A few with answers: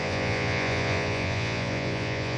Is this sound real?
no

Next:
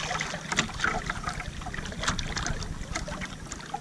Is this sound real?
yes